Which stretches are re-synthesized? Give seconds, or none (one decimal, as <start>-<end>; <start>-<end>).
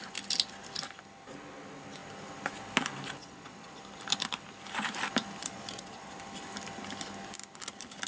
3.2-3.8; 5.4-6.1